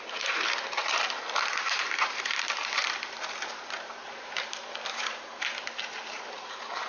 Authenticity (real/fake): fake